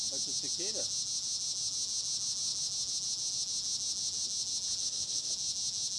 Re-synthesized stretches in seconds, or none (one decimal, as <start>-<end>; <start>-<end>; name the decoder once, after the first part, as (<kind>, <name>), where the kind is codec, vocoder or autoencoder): 4.8-5.3 (autoencoder, DAC-VAE)